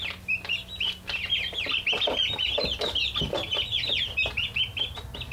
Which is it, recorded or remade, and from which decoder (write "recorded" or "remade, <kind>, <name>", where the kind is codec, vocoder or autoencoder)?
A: recorded